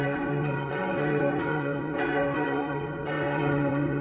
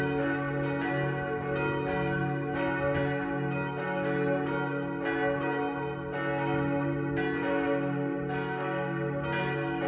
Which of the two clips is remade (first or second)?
first